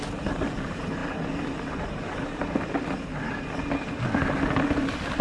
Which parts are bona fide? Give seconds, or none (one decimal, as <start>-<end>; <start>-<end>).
0.0-5.2